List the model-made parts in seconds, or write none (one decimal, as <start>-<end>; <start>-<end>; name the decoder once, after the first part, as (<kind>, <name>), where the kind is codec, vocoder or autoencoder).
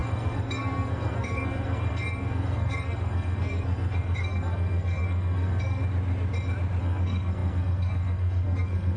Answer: 0.0-5.8 (codec, SNAC); 6.8-9.0